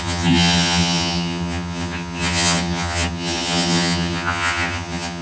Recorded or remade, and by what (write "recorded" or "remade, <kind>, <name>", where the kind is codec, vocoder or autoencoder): remade, vocoder, HiFi-GAN